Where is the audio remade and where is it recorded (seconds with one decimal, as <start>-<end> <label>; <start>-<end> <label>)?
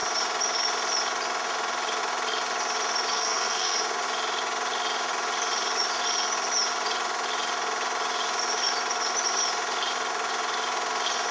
0.0-3.1 recorded; 3.1-3.8 remade; 3.8-11.3 recorded